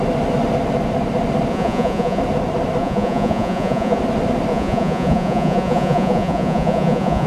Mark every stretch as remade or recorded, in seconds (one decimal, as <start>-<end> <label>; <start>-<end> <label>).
0.0-1.5 recorded; 1.5-2.2 remade; 2.2-2.8 recorded; 2.8-4.0 remade; 4.0-4.5 recorded; 4.5-7.3 remade